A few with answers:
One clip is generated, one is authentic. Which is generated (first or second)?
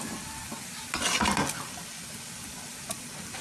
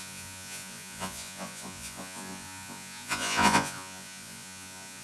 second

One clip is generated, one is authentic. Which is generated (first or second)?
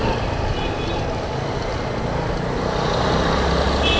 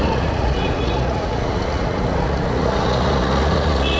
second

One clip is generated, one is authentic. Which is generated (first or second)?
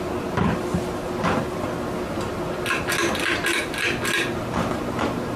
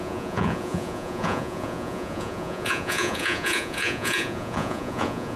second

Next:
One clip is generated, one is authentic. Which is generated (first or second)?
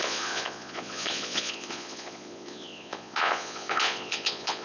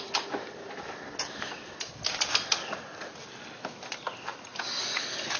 first